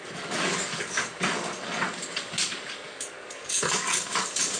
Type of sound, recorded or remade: remade